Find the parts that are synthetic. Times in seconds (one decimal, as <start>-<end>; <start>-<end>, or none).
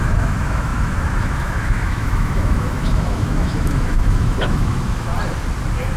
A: 0.0-5.1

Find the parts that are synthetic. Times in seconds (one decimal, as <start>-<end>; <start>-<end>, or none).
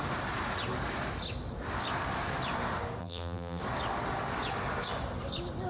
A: 3.0-3.6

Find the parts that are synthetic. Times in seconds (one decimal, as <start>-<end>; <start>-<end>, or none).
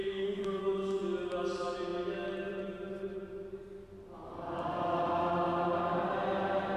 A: 0.0-0.6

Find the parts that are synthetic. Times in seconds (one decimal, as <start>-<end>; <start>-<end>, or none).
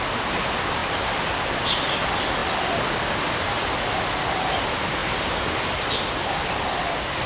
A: none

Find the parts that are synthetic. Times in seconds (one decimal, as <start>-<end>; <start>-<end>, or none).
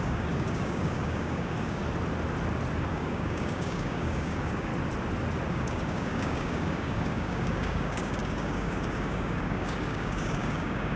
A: 0.0-1.8; 2.9-4.7; 5.5-11.0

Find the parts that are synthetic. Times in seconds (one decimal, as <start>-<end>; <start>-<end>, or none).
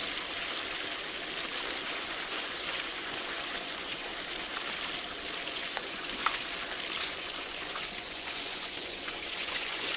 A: 1.8-4.1; 5.4-6.4; 7.0-10.0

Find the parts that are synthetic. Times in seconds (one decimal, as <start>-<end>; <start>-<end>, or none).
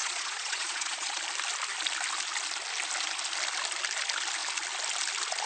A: 0.0-1.2